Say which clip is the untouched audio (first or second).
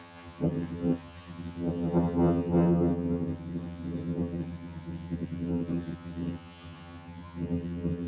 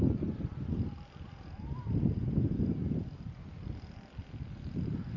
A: second